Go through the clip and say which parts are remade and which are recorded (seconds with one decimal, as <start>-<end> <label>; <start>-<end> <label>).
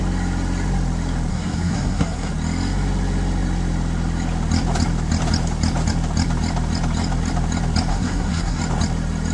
0.0-1.3 recorded; 1.3-2.3 remade; 2.3-7.9 recorded; 7.9-8.6 remade; 8.6-9.3 recorded